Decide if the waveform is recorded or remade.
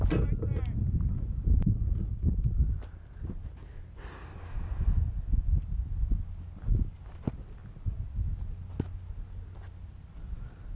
recorded